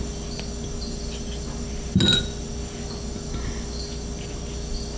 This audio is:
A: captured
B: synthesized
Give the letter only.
A